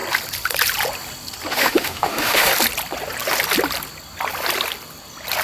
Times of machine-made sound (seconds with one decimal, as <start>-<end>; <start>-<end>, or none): 1.5-2.5